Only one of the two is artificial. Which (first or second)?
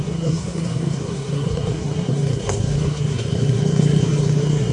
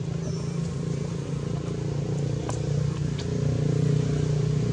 first